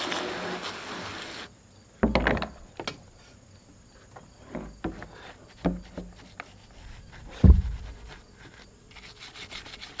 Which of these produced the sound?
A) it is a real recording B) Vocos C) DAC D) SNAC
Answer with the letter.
A